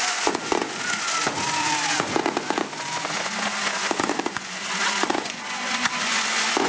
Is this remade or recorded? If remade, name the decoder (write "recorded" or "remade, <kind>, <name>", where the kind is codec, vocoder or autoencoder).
remade, vocoder, Vocos